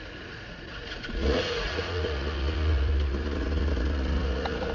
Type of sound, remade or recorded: remade